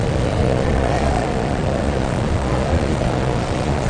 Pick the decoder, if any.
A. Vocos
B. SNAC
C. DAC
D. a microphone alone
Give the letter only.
A